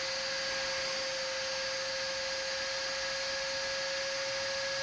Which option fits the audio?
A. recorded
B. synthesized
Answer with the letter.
A